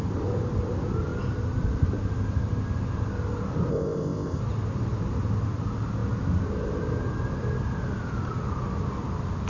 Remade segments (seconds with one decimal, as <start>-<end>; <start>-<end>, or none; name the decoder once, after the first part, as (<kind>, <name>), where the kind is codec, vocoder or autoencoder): 3.7-4.4 (codec, ZipCodec)